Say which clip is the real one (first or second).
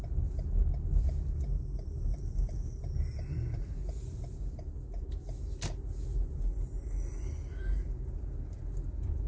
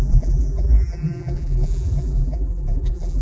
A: first